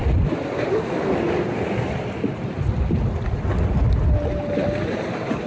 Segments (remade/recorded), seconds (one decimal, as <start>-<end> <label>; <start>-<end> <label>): 0.0-5.5 recorded

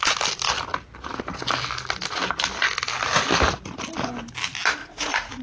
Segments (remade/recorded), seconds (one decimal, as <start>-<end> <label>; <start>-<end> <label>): 0.0-4.8 recorded; 4.8-5.4 remade

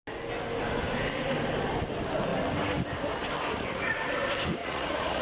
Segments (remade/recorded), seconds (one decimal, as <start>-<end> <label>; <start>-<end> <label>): 0.0-4.6 recorded; 4.6-5.2 remade

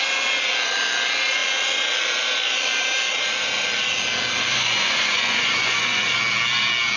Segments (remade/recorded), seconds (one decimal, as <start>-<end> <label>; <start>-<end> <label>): 0.0-4.5 recorded; 4.5-6.2 remade; 6.2-7.0 recorded

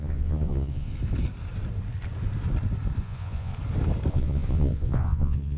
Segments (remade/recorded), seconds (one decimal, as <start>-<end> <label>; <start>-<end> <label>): 0.0-0.9 remade; 0.9-3.0 recorded; 3.0-3.5 remade; 3.5-4.1 recorded; 4.1-5.6 remade

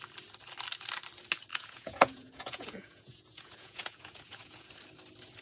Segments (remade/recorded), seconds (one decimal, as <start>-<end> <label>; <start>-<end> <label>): 0.0-1.5 recorded; 1.5-4.7 remade; 4.7-5.4 recorded

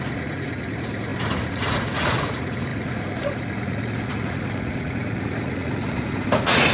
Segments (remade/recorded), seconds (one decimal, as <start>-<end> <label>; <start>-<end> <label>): 0.0-6.7 remade